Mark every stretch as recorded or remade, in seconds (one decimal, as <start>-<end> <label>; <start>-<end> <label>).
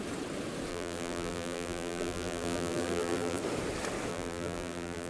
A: 0.0-0.7 recorded; 0.7-3.4 remade; 3.4-4.1 recorded; 4.1-5.1 remade